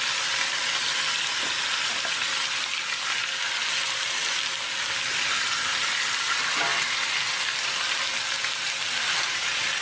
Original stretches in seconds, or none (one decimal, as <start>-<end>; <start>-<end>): 0.0-9.8